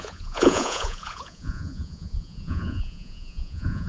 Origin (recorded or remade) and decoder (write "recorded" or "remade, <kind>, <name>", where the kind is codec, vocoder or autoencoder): remade, vocoder, Vocos